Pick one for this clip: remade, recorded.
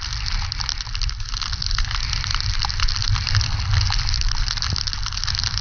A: recorded